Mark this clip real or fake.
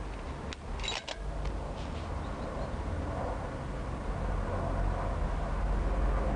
real